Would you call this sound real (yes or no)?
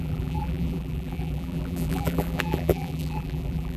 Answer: no